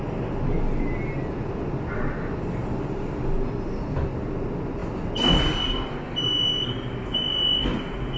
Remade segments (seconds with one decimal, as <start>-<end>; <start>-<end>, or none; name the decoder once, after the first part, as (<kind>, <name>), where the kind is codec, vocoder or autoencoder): none